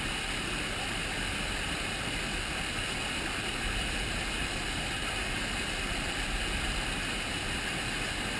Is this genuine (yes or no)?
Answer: yes